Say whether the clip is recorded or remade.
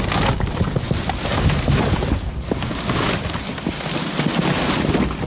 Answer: recorded